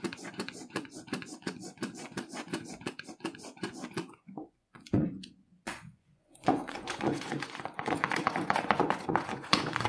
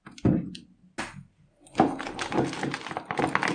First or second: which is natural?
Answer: second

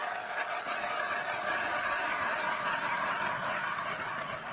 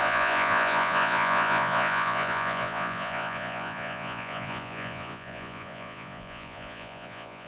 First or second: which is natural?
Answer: first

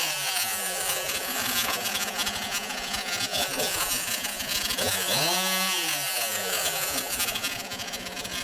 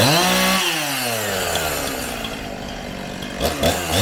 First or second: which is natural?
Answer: second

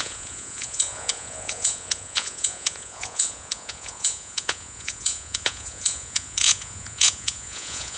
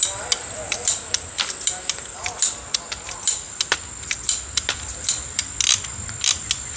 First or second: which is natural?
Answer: second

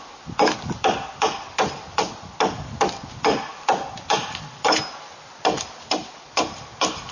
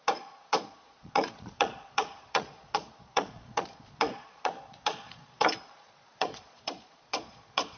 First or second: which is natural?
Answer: first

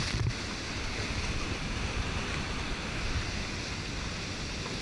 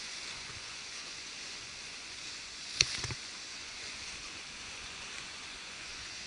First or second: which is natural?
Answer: first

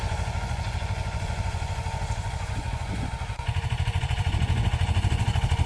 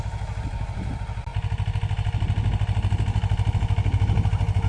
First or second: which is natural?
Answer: second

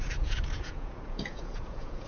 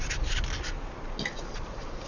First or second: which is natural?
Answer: second